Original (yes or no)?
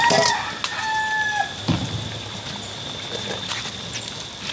yes